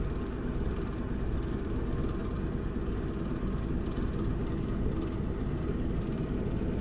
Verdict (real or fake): real